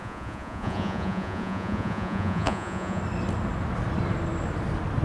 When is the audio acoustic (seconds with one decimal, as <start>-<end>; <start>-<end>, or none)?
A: 3.0-5.0